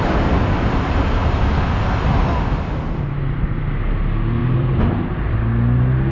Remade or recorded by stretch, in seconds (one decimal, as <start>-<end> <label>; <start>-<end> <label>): 0.0-4.4 recorded; 4.4-5.3 remade; 5.3-6.1 recorded